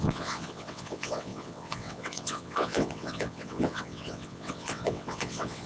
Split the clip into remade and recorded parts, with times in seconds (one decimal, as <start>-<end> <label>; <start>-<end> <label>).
0.0-5.7 remade